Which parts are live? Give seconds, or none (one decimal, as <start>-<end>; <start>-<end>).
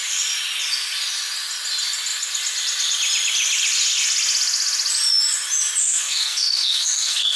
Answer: 0.0-5.8